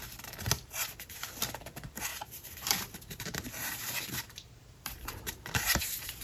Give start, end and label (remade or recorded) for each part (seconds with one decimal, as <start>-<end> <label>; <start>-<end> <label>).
0.0-2.1 recorded; 2.1-5.8 remade; 5.8-6.2 recorded